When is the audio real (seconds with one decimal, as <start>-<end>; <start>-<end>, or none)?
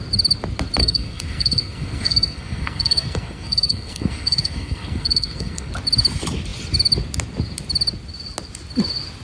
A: 0.0-0.8; 5.7-9.2